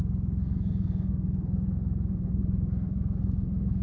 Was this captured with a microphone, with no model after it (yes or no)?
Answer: no